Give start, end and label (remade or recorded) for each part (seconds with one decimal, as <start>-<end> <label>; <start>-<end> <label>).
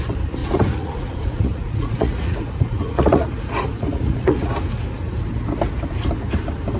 0.0-0.4 recorded; 0.4-4.5 remade; 4.5-6.8 recorded